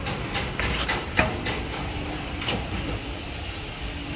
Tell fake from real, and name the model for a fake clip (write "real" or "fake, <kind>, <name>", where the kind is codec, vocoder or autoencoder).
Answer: fake, vocoder, BigVGAN v2